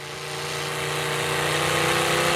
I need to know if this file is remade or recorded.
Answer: recorded